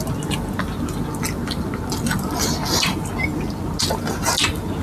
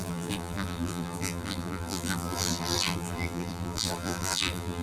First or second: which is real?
first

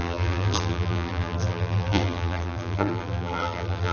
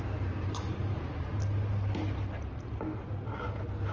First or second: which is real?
second